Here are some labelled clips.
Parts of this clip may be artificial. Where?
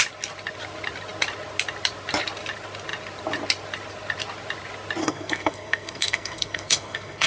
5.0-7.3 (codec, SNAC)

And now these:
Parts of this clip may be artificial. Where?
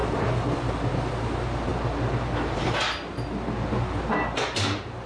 0.0-1.1 (vocoder, BigVGAN v2)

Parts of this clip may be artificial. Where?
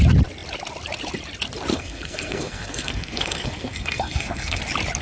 1.7-4.6 (codec, SNAC)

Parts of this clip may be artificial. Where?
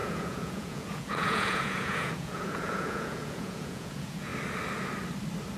0.0-4.3 (vocoder, Vocos)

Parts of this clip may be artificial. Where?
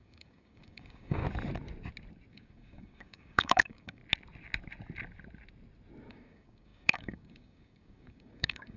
0.0-1.2 (codec, DAC); 2.3-4.0; 6.1-8.8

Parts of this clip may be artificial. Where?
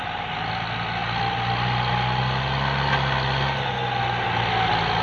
none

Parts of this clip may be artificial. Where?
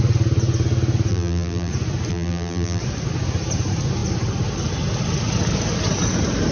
1.1-1.7 (vocoder, BigVGAN v2); 2.1-2.8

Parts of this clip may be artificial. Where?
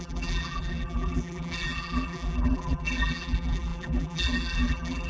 0.0-5.1 (vocoder, BigVGAN v2)